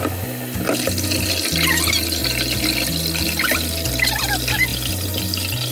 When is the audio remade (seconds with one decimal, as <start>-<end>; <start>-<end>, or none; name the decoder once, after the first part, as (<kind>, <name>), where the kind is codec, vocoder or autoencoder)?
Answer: none